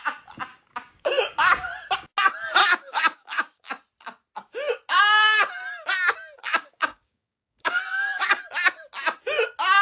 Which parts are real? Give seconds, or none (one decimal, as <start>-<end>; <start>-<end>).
0.0-0.5; 1.1-2.6; 3.7-6.4; 7.8-9.8